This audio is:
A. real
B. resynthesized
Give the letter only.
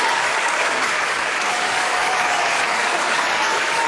B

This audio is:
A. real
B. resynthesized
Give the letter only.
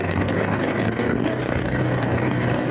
B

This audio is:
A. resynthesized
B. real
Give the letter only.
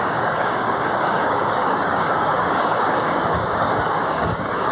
A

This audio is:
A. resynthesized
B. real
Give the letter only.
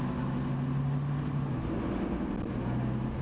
B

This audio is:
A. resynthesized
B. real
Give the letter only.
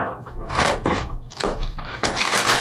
A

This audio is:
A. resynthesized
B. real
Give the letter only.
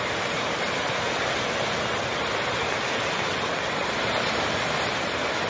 B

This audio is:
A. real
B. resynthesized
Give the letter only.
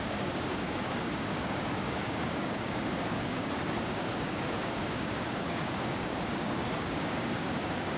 B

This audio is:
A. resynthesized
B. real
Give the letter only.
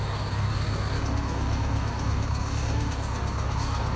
A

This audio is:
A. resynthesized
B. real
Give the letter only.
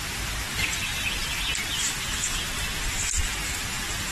B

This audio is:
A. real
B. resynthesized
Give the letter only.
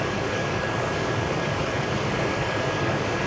B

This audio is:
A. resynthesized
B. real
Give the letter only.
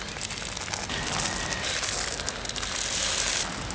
B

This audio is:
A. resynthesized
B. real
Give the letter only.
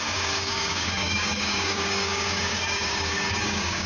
A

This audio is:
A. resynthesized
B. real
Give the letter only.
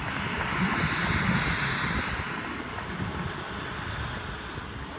B